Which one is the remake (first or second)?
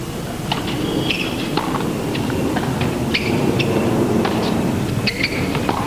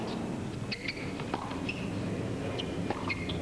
first